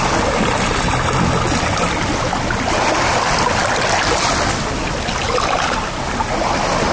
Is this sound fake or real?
real